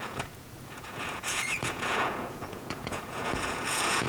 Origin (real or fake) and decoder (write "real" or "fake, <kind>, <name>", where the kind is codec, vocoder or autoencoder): fake, vocoder, Vocos